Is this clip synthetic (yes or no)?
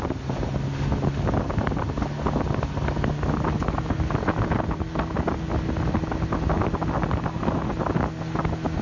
no